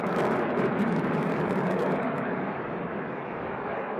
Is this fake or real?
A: fake